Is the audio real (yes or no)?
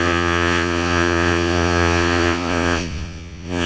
no